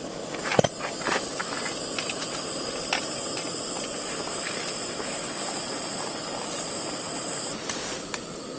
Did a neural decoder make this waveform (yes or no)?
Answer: no